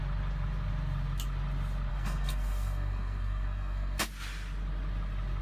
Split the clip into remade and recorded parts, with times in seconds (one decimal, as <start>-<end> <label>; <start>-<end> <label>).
0.0-1.9 recorded; 1.9-4.0 remade; 4.0-5.4 recorded